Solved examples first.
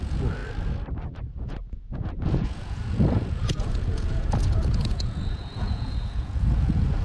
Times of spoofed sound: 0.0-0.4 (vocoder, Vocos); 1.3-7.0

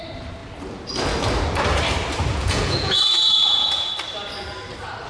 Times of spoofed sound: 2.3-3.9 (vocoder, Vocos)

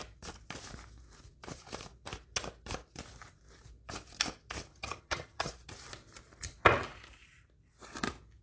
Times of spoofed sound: 4.7-5.5 (vocoder, HiFi-GAN)